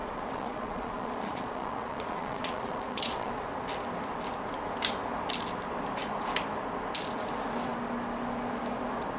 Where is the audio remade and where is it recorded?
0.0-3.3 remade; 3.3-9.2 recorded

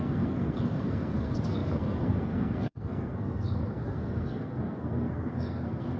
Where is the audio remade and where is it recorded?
0.0-6.0 remade

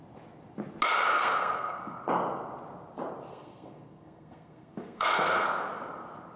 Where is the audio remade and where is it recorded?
0.0-1.1 recorded; 1.1-1.8 remade; 1.8-3.3 recorded; 3.3-5.7 remade; 5.7-6.4 recorded

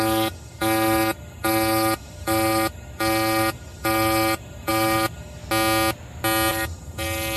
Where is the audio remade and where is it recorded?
0.0-5.4 remade; 5.4-6.5 recorded; 6.5-7.4 remade